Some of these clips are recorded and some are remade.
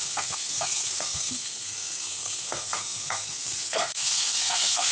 remade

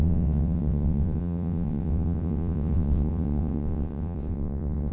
remade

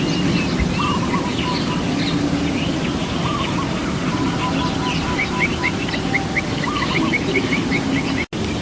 recorded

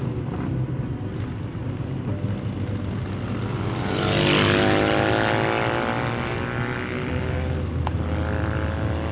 recorded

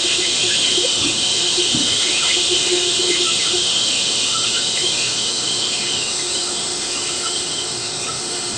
remade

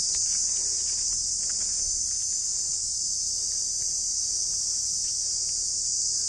recorded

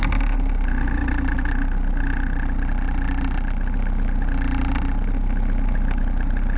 recorded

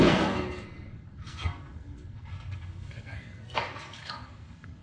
remade